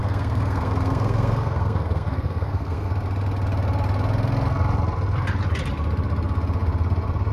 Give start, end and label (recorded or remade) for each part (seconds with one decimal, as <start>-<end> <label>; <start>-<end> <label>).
0.0-2.9 remade; 2.9-7.3 recorded